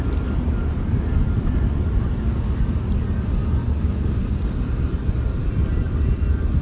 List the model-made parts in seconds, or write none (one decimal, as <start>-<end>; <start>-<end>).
none